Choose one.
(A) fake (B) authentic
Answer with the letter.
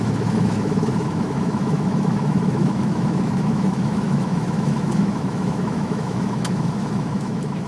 A